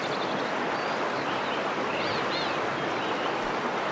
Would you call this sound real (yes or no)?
yes